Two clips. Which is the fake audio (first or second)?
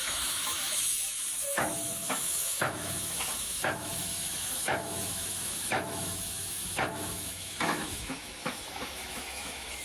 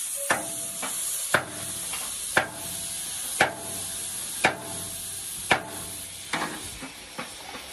first